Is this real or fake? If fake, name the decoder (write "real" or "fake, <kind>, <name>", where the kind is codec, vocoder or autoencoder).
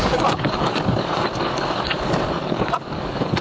fake, codec, DAC